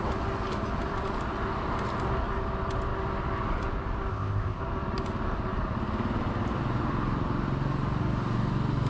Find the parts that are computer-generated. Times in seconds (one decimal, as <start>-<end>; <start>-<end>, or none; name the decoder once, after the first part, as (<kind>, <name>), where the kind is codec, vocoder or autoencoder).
4.1-4.6 (codec, ZipCodec)